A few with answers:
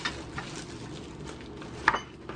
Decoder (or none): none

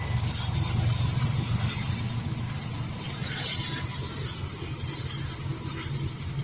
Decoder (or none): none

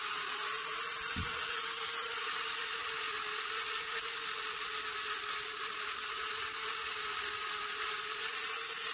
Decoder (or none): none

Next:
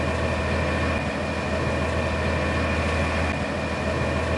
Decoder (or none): none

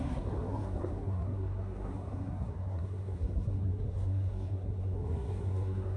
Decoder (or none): codec, SNAC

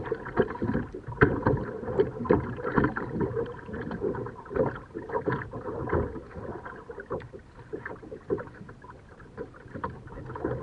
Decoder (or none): vocoder, BigVGAN v2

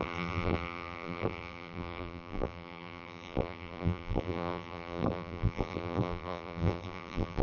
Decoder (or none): vocoder, BigVGAN v2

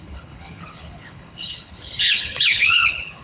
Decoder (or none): codec, HILCodec